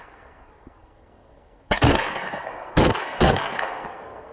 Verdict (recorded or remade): remade